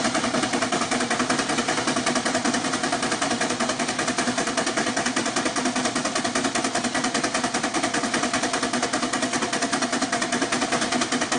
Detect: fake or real real